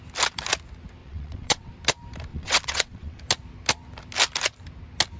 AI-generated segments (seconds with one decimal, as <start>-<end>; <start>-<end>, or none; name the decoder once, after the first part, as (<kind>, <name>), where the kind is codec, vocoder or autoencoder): 1.0-1.7 (vocoder, WaveNeXt); 2.3-3.2